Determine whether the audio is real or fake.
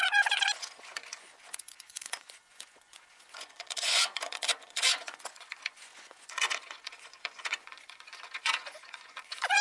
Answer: fake